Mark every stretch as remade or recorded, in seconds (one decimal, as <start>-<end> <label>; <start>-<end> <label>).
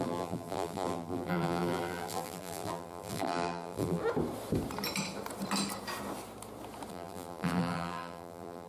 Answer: 0.0-4.0 remade; 4.0-6.9 recorded; 6.9-8.7 remade